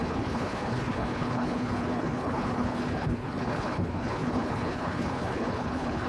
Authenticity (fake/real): fake